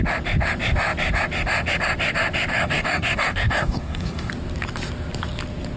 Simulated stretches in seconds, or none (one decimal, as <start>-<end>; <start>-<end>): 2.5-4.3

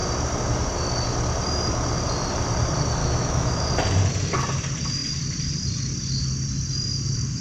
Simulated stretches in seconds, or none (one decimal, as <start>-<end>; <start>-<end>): 3.0-3.6

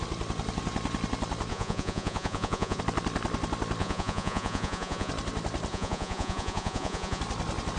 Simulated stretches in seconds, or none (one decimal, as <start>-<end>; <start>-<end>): 1.5-2.8; 3.8-5.1; 5.7-7.2

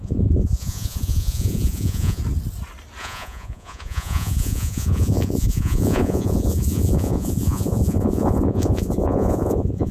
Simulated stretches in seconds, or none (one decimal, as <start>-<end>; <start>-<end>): 0.0-2.2; 3.0-9.9

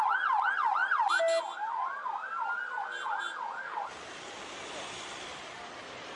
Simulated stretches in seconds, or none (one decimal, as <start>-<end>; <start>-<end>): none

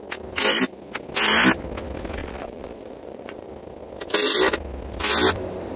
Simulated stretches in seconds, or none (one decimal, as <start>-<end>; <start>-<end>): 2.2-3.5

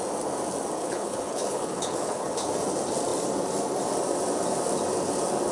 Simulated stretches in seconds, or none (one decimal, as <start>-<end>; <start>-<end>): 0.8-2.5